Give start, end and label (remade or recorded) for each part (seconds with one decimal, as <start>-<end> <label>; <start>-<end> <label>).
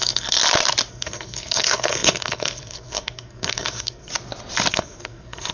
0.0-0.4 remade; 0.4-0.9 recorded; 0.9-4.1 remade; 4.1-4.7 recorded; 4.7-5.5 remade